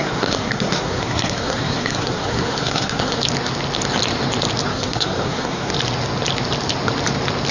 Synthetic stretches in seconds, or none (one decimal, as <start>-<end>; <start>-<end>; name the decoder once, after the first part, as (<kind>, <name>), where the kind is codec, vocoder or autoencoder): 0.0-3.2 (codec, SNAC); 4.7-5.7